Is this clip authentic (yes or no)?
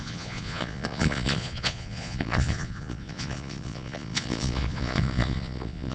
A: no